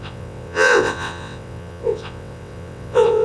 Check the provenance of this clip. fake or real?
fake